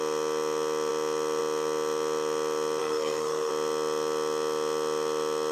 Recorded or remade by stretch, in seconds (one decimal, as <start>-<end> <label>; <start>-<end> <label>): 0.0-2.8 recorded; 2.8-3.5 remade; 3.5-5.5 recorded